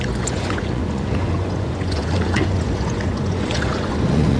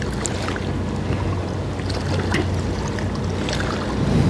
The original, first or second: second